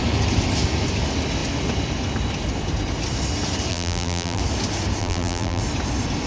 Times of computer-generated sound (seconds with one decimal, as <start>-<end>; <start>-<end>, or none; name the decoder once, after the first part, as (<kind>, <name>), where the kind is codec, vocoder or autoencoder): 3.7-4.4 (vocoder, BigVGAN v2); 5.0-5.6